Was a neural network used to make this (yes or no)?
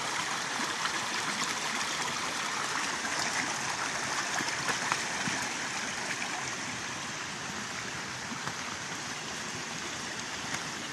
no